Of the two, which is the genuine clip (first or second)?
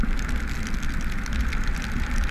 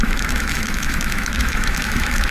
first